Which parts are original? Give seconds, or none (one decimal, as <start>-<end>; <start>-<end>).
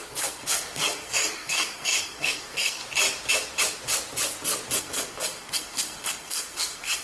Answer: 2.8-4.8